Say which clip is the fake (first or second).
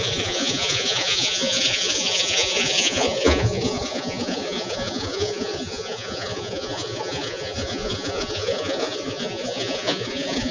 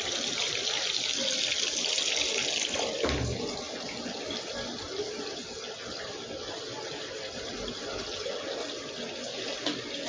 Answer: first